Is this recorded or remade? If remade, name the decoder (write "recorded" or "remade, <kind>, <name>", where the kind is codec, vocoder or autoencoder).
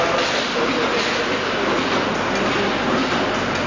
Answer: recorded